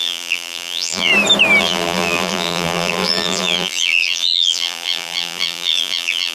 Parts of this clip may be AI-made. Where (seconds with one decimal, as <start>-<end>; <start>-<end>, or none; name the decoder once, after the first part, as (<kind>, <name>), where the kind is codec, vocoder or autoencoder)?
0.0-1.1 (vocoder, BigVGAN v2); 1.6-6.3

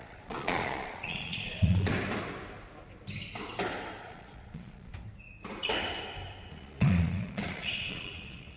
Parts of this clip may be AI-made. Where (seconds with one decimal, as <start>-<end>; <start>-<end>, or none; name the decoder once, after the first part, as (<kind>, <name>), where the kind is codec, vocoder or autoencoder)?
0.0-1.9 (vocoder, Vocos); 4.0-4.9; 6.5-8.6

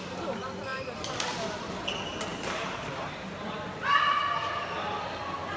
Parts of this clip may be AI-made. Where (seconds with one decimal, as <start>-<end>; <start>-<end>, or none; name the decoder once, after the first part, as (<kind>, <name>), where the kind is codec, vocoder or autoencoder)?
0.7-1.7 (vocoder, BigVGAN v2); 2.3-3.3

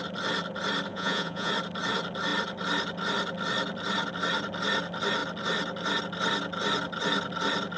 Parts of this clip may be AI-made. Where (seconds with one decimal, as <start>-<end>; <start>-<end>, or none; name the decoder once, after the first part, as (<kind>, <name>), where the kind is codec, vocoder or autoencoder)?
0.9-1.5 (vocoder, Vocos)

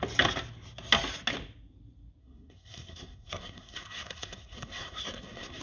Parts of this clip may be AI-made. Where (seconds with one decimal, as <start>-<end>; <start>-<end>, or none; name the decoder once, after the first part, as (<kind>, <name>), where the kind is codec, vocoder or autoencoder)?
2.2-5.6 (codec, SNAC)

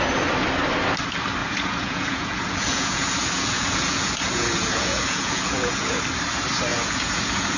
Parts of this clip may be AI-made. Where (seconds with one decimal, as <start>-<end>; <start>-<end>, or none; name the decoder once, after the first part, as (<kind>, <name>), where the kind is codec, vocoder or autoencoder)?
1.4-6.0 (vocoder, Vocos); 6.7-7.6